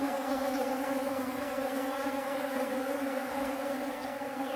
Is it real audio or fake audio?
fake